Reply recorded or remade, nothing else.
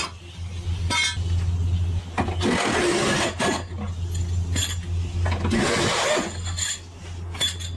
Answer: recorded